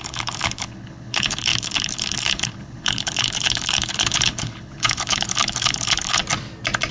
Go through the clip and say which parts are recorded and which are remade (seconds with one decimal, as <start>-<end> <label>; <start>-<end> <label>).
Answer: 0.0-6.2 remade; 6.2-6.9 recorded